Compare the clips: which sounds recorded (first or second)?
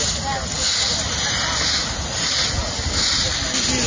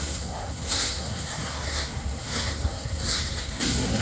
first